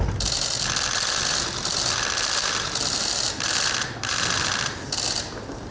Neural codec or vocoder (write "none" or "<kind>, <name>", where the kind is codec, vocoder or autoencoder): none